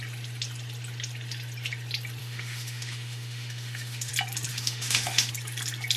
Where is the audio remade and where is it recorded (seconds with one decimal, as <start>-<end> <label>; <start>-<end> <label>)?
0.0-2.2 recorded; 2.2-4.1 remade; 4.1-4.5 recorded; 4.5-5.3 remade; 5.3-6.0 recorded